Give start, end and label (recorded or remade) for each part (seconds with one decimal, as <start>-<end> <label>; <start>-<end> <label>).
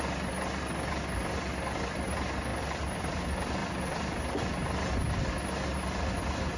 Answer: 0.0-2.5 recorded; 2.5-3.2 remade; 3.2-3.6 recorded; 3.6-4.5 remade; 4.5-6.6 recorded